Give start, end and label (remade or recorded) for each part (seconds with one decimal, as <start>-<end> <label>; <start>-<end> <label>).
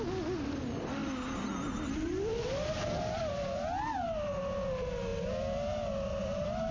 0.0-6.7 recorded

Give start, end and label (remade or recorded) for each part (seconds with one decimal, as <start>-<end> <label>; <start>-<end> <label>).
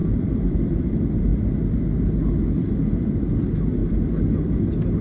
0.0-0.9 remade; 0.9-3.8 recorded; 3.8-4.6 remade; 4.6-5.0 recorded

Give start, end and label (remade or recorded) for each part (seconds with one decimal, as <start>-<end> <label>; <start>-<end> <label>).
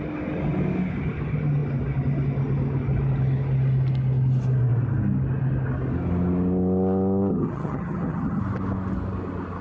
0.0-7.3 recorded; 7.3-8.4 remade; 8.4-9.6 recorded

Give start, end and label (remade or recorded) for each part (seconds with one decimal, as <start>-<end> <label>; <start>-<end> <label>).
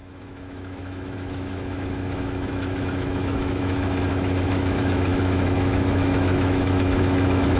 0.0-7.6 remade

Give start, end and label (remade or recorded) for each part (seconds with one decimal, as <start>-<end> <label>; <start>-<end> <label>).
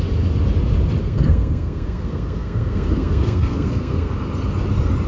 0.0-1.0 recorded; 1.0-4.1 remade; 4.1-5.1 recorded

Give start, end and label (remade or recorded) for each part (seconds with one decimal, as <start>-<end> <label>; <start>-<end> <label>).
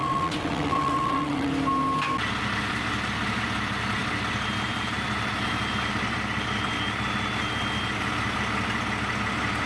0.0-1.5 remade; 1.5-9.7 recorded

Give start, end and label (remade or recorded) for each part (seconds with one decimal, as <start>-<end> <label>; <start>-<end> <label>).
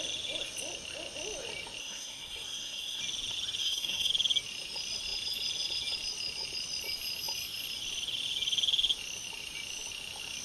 0.0-1.8 recorded; 1.8-3.0 remade; 3.0-3.6 recorded; 3.6-4.1 remade; 4.1-10.4 recorded